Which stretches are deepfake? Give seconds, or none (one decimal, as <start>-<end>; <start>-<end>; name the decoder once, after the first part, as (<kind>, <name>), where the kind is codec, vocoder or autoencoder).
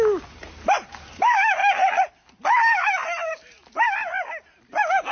none